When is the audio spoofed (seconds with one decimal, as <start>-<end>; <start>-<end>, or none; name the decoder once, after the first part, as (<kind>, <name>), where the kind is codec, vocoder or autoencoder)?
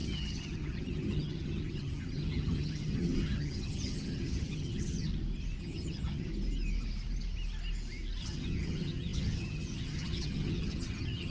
0.0-5.1 (vocoder, HiFi-GAN); 5.6-6.3; 8.2-11.3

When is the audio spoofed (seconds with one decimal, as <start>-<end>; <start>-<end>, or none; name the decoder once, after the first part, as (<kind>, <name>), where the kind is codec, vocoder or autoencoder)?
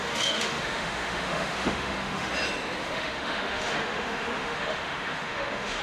0.0-2.3 (autoencoder, DAC-VAE); 2.8-5.8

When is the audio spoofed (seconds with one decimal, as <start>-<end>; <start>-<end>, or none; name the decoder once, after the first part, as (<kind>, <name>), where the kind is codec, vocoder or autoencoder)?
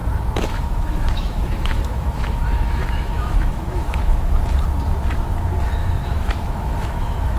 0.0-4.4 (autoencoder, DAC-VAE); 5.8-7.4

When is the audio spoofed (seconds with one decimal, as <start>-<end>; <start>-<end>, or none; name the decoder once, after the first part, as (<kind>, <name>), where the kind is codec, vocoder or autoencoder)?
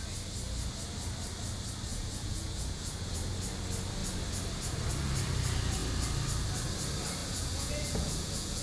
1.9-3.3 (vocoder, Vocos); 7.2-8.6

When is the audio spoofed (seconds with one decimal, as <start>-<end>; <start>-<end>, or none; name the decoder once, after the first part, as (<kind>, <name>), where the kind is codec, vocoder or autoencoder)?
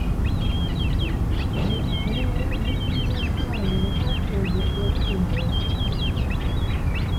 none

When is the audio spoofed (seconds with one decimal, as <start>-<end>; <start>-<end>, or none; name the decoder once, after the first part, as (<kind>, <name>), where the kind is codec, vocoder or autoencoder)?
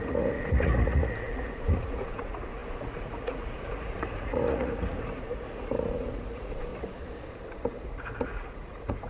0.0-6.7 (vocoder, Vocos); 7.8-9.1